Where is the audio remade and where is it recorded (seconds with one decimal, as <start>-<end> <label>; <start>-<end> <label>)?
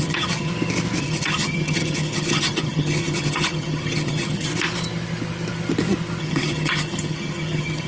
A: 0.0-0.5 remade; 0.5-1.0 recorded; 1.0-4.5 remade; 4.5-6.2 recorded; 6.2-7.9 remade